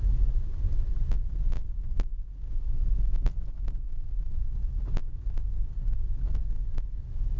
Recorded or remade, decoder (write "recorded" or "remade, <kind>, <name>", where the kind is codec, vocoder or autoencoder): recorded